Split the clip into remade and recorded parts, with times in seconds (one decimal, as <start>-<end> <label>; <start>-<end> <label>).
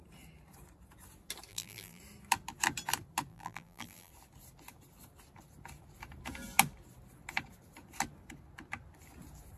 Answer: 0.0-1.5 recorded; 1.5-2.0 remade; 2.0-3.3 recorded; 3.3-4.1 remade; 4.1-9.6 recorded